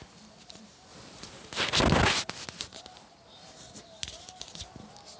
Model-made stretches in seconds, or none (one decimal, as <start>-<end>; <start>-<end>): none